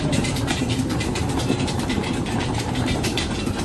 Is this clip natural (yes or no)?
no